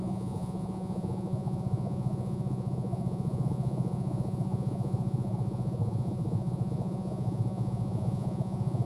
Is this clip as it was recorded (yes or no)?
no